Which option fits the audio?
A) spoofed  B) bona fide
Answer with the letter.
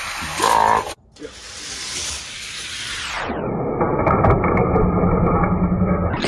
B